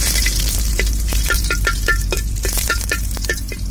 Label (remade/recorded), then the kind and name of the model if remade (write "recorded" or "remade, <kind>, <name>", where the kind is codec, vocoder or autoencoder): remade, vocoder, BigVGAN v2